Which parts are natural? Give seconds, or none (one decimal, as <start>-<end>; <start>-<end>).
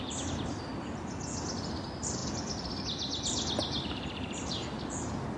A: 0.0-5.4